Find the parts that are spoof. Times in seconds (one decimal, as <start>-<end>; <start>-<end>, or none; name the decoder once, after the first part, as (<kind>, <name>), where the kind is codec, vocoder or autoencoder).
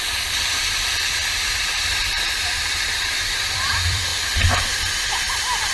0.0-4.1 (vocoder, BigVGAN v2); 5.1-5.7